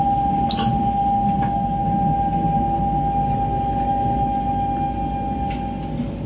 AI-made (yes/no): no